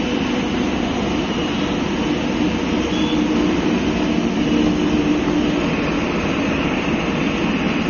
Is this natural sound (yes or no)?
yes